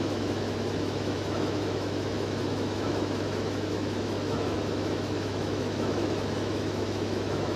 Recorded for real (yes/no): no